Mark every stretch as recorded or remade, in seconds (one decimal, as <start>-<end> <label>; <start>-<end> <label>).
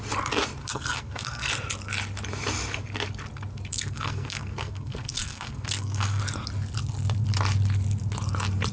0.0-0.6 recorded; 0.6-1.5 remade; 1.5-3.7 recorded; 3.7-6.2 remade; 6.2-8.7 recorded